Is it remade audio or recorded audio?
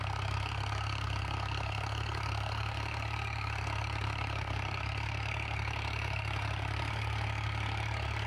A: remade